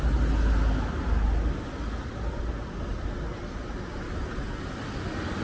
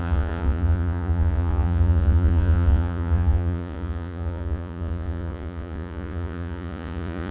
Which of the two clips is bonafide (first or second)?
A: first